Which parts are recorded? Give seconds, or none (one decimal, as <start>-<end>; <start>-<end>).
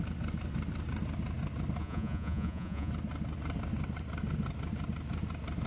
0.0-1.8; 2.9-5.7